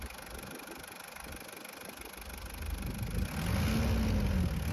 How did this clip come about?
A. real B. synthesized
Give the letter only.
A